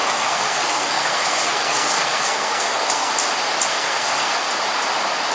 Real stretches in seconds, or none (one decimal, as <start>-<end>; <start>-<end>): 3.1-3.7; 4.5-5.3